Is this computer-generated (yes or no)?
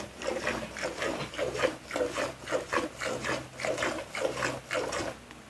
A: no